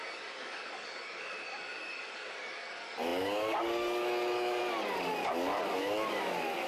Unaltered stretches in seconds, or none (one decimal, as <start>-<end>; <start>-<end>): none